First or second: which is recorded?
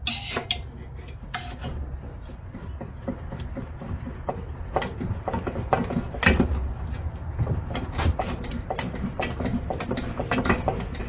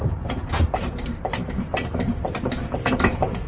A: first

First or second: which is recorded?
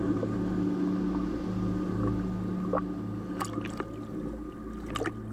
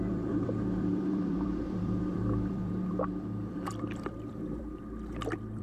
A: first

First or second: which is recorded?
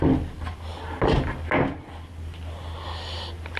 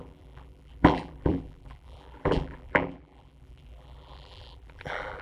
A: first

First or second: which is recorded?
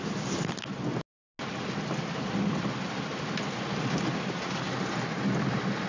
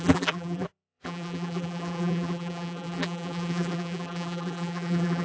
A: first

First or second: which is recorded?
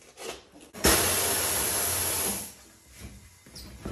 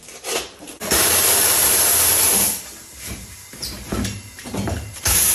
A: first